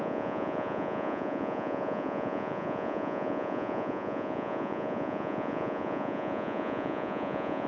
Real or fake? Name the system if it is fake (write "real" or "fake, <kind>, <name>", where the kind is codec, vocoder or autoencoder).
fake, vocoder, Vocos